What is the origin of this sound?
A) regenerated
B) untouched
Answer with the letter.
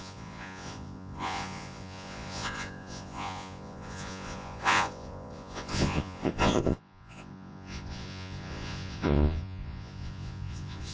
A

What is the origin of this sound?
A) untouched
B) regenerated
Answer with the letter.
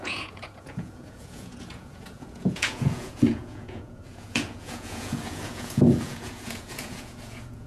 B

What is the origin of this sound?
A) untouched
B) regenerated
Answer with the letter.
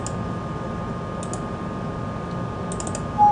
A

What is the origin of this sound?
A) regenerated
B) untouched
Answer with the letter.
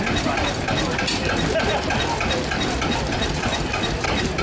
B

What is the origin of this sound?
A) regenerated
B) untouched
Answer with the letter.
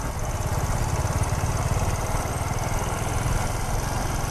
B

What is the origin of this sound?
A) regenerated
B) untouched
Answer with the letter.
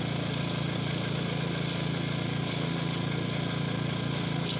B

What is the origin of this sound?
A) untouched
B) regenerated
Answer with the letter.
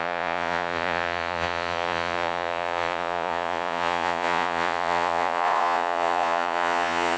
B